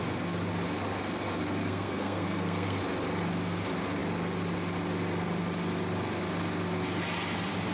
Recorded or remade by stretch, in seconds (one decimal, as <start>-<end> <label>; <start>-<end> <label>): 0.0-1.6 recorded; 1.6-2.8 remade; 2.8-7.7 recorded